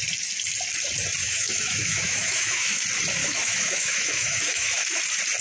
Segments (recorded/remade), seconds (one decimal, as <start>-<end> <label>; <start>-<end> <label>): 0.0-1.2 recorded; 1.2-2.8 remade; 2.8-3.2 recorded; 3.2-5.0 remade; 5.0-5.4 recorded